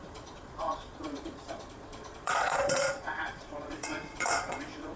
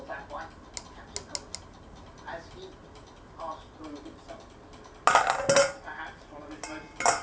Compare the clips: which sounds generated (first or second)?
first